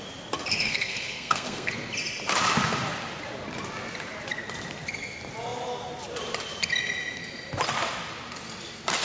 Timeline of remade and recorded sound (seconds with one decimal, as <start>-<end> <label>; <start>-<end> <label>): 0.0-0.5 recorded; 0.5-1.7 remade; 1.7-9.0 recorded